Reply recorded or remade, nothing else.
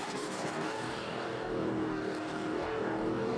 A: remade